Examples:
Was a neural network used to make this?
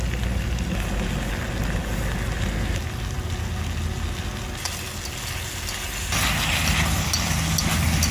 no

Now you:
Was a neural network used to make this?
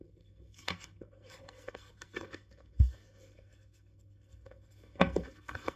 yes